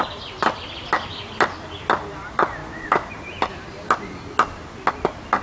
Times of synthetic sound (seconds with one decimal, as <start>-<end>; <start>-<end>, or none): none

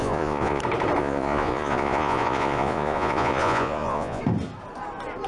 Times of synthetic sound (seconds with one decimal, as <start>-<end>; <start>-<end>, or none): 0.0-0.6; 1.0-4.2